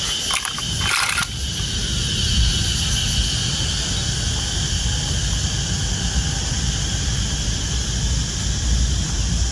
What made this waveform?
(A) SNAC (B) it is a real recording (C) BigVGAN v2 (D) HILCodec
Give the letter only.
B